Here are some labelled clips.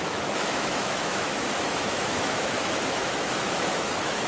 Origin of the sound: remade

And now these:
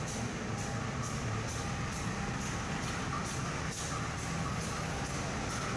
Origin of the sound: recorded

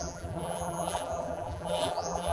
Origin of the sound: remade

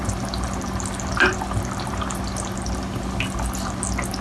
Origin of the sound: recorded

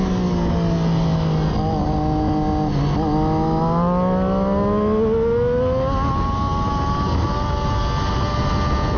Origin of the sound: recorded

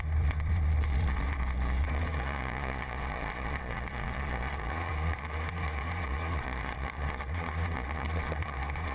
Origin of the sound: remade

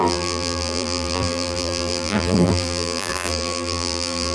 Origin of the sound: remade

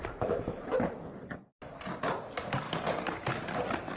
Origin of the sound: recorded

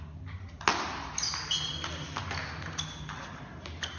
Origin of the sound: recorded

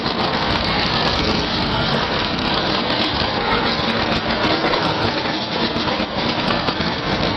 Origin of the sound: remade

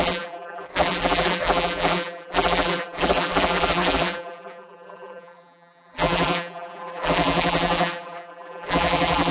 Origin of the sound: remade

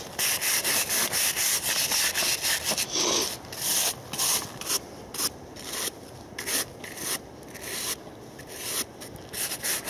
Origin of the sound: recorded